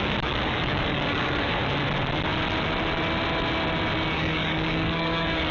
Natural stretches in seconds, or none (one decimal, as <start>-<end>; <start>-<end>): 1.6-4.1